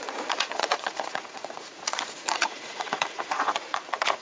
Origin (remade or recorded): remade